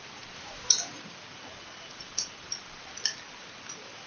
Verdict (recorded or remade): recorded